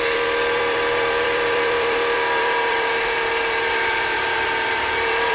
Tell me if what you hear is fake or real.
fake